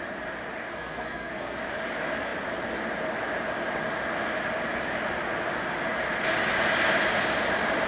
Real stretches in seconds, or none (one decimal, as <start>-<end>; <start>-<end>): 0.0-0.6; 1.6-7.9

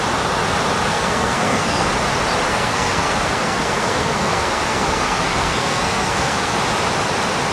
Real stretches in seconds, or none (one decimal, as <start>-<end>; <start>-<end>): 0.0-0.9; 1.9-2.5; 6.6-7.5

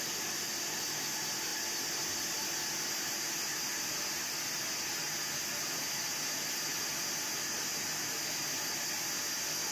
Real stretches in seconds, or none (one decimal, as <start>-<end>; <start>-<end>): 0.0-9.7

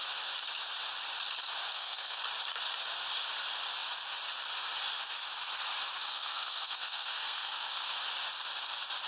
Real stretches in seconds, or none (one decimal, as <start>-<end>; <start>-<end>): 0.0-1.7; 2.2-6.0; 7.9-9.1

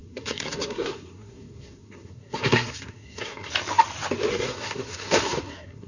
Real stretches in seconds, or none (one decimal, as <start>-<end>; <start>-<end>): 3.5-4.3

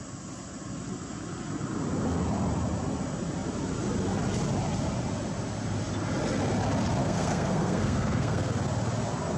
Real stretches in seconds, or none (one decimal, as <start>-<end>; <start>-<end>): 0.0-7.0; 8.5-9.4

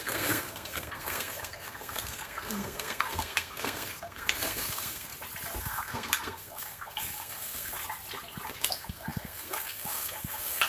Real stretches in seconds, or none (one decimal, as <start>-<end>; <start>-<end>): 5.1-5.6; 7.8-8.5